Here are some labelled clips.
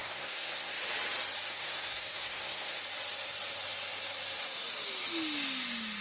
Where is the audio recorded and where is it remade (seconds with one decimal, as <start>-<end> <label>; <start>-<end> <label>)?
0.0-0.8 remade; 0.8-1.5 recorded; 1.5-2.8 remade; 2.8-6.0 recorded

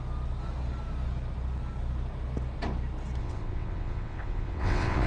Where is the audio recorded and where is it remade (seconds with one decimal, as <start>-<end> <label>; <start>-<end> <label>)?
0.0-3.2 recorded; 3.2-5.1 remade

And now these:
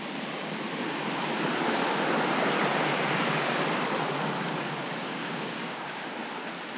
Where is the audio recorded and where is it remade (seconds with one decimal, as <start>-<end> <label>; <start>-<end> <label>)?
0.0-5.0 recorded; 5.0-6.1 remade; 6.1-6.8 recorded

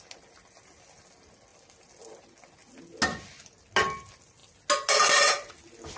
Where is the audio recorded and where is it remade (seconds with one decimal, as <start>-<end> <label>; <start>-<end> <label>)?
0.0-6.0 recorded

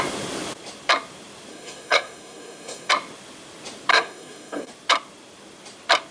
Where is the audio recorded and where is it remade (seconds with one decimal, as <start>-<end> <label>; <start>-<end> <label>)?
0.0-1.5 recorded; 1.5-2.9 remade; 2.9-3.9 recorded; 3.9-4.7 remade; 4.7-6.1 recorded

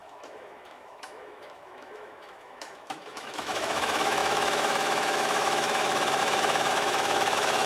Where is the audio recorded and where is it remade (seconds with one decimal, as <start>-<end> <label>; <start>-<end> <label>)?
0.0-7.7 remade

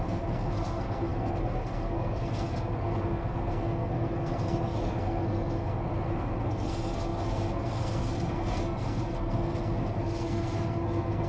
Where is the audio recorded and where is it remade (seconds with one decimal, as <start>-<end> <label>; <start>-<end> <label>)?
0.0-11.3 remade

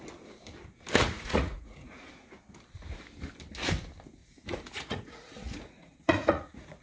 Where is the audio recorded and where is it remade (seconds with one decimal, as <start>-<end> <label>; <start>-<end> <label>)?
0.0-1.0 recorded; 1.0-2.1 remade; 2.1-4.2 recorded; 4.2-6.8 remade